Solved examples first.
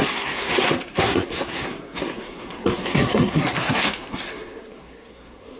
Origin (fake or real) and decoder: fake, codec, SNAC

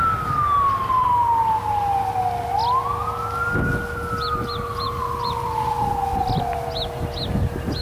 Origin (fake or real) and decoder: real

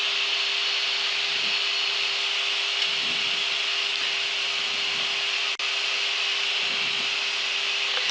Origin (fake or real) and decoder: real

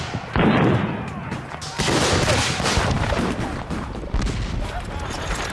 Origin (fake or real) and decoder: real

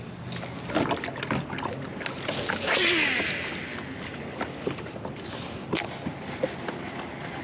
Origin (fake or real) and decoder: real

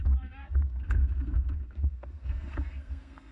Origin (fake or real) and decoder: fake, codec, SNAC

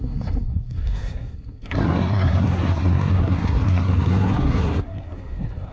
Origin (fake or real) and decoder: fake, codec, SNAC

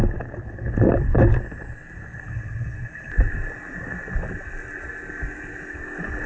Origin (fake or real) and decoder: real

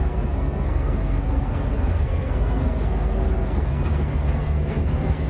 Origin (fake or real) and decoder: fake, codec, SNAC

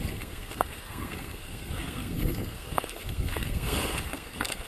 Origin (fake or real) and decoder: fake, codec, SNAC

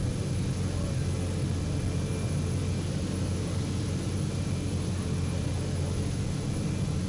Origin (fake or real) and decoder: real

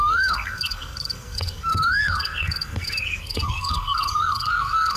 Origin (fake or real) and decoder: fake, codec, SNAC